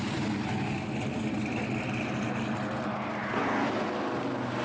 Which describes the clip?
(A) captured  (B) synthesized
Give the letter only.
A